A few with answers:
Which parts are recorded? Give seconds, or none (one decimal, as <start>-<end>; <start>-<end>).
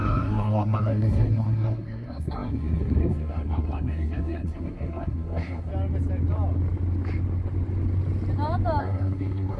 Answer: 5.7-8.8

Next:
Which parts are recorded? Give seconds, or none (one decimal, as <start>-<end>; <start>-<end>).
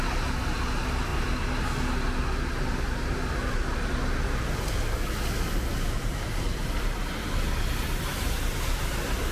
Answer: 0.0-9.3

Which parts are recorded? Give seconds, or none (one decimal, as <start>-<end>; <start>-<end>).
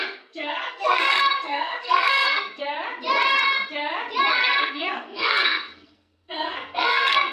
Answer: 2.6-4.3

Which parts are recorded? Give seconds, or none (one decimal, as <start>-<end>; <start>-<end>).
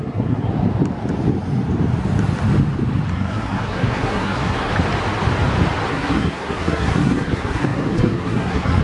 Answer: 0.5-3.1; 4.7-5.9